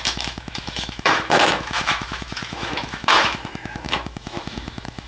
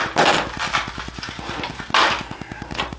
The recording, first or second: second